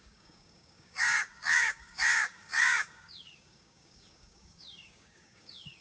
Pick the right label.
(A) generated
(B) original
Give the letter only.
A